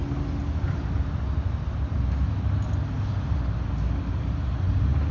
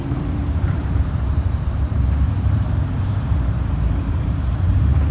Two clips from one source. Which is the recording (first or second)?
first